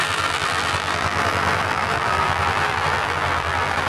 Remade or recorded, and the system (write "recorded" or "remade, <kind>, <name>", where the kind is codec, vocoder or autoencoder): remade, vocoder, BigVGAN v2